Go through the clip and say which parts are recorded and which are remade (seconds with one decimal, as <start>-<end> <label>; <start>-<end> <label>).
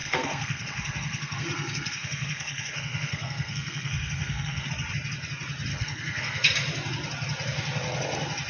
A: 0.0-4.7 remade; 4.7-5.7 recorded; 5.7-6.5 remade; 6.5-8.5 recorded